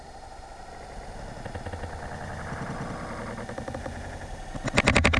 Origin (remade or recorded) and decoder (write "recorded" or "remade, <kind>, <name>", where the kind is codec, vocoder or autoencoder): recorded